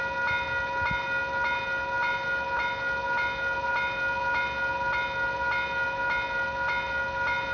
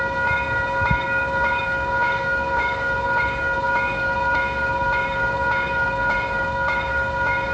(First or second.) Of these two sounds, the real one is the first